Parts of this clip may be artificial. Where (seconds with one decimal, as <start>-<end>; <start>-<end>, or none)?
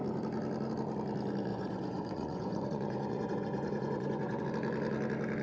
1.5-4.4